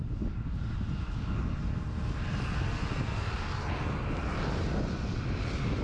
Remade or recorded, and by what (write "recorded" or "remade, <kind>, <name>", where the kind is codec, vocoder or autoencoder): recorded